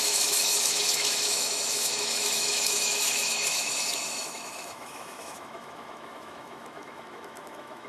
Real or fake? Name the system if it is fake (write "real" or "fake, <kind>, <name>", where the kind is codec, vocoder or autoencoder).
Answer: fake, autoencoder, DAC-VAE